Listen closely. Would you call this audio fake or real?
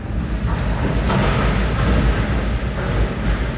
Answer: real